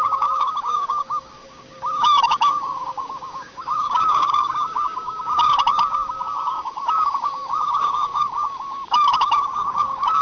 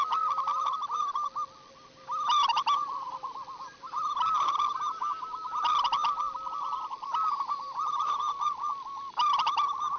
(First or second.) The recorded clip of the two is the second